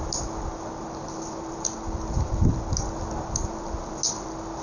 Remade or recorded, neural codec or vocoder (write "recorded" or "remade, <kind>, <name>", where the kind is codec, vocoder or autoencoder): recorded